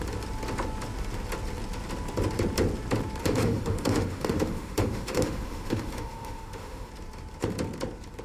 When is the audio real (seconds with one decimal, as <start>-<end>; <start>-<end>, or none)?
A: 0.0-3.2; 6.9-8.2